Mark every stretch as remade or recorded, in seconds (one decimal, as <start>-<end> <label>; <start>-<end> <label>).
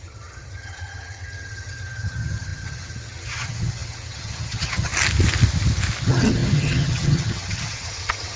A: 0.0-4.9 remade; 4.9-6.0 recorded; 6.0-8.4 remade